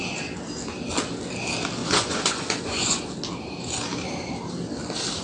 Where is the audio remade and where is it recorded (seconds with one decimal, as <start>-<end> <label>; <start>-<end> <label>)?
0.0-1.8 recorded; 1.8-3.1 remade; 3.1-5.2 recorded